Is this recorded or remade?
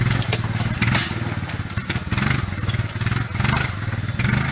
recorded